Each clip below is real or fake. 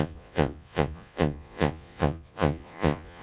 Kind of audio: fake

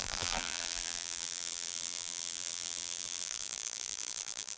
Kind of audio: fake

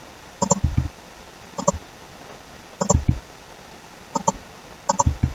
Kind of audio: real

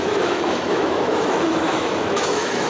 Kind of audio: fake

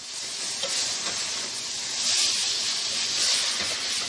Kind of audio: fake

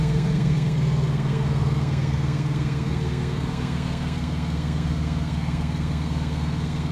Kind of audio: fake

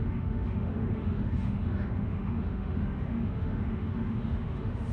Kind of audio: fake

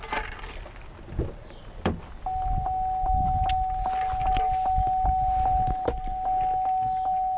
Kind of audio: real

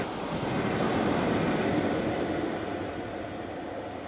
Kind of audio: real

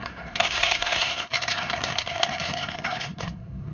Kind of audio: fake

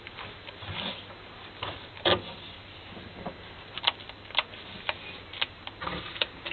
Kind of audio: real